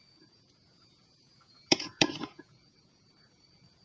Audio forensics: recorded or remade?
remade